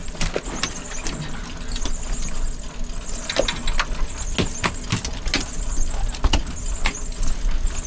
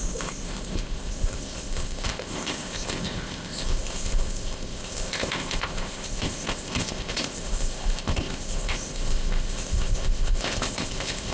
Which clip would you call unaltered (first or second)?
first